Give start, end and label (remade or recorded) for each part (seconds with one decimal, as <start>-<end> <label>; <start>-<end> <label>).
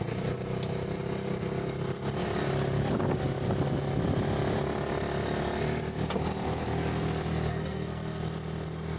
0.0-7.5 recorded; 7.5-8.2 remade; 8.2-9.0 recorded